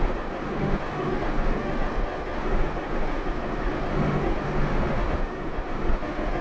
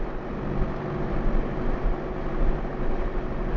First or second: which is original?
second